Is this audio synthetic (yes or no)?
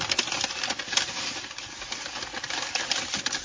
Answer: no